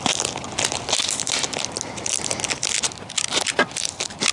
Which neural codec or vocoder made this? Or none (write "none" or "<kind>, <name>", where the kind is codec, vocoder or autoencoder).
none